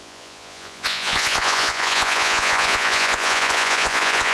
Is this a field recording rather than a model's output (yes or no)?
no